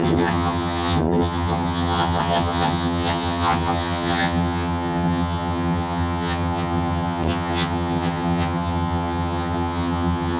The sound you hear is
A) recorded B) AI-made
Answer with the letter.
B